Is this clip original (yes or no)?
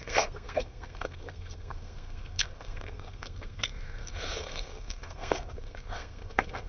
no